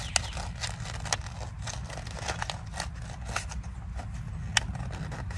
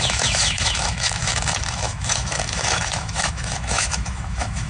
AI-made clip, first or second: second